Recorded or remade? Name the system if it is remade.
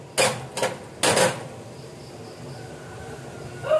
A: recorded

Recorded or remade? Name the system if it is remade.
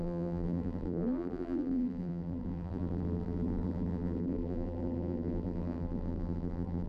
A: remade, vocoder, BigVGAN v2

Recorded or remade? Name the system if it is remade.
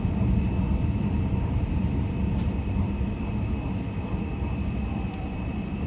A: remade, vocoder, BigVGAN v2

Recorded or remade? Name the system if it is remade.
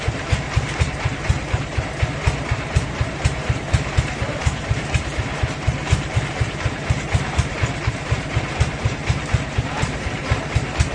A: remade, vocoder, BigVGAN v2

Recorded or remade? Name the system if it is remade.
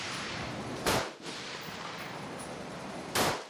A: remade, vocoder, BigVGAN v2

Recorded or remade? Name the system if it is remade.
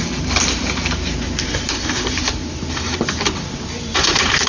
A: remade, vocoder, BigVGAN v2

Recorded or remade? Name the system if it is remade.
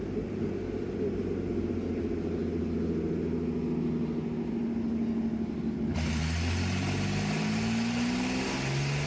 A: recorded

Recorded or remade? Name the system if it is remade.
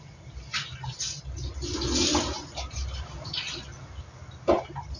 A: recorded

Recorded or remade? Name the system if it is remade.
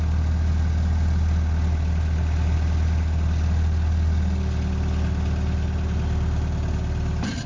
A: recorded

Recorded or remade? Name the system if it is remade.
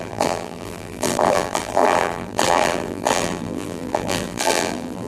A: remade, vocoder, BigVGAN v2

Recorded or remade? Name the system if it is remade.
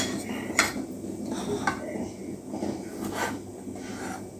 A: recorded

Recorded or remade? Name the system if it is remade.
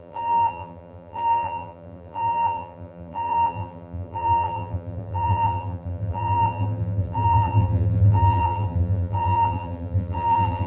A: remade, vocoder, BigVGAN v2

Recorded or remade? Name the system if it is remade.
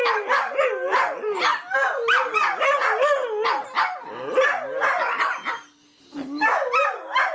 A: recorded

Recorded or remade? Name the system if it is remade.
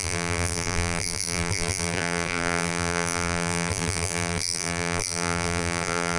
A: remade, vocoder, BigVGAN v2